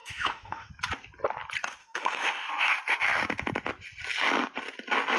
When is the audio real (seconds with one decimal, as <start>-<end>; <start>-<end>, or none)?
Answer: 0.7-1.8; 2.5-5.2